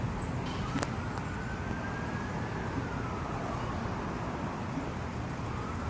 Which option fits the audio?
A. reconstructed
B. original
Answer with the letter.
B